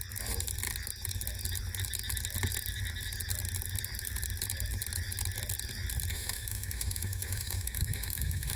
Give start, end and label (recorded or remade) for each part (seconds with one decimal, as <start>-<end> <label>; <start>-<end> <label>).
0.0-6.1 recorded; 6.1-8.6 remade